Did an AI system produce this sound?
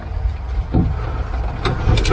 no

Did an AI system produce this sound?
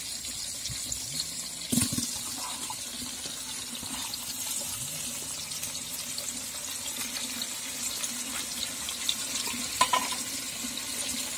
no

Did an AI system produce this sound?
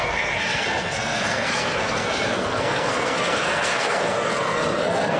yes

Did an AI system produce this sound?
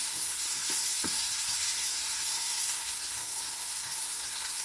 yes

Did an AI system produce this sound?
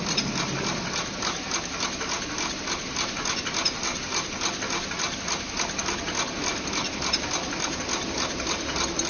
no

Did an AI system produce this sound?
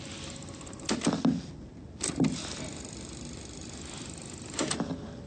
no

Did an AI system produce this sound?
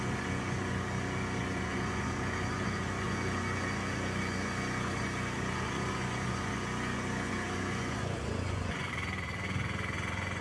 yes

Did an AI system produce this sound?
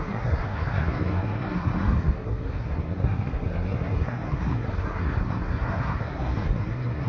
yes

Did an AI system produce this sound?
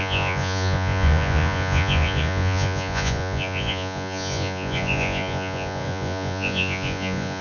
yes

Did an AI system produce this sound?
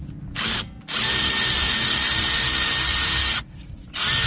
no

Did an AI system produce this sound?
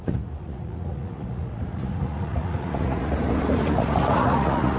yes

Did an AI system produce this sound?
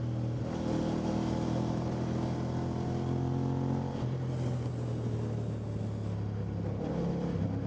no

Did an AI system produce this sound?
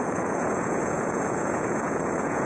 yes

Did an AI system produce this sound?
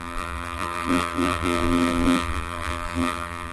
yes